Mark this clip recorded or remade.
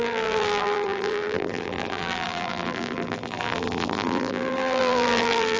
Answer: remade